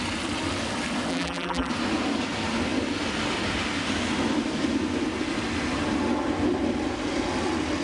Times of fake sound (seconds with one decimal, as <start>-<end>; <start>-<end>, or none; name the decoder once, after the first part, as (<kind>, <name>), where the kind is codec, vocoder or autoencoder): 1.1-1.7 (vocoder, BigVGAN v2)